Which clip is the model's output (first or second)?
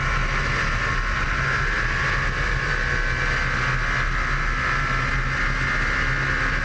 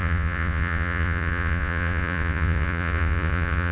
second